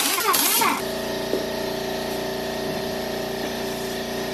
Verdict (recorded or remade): recorded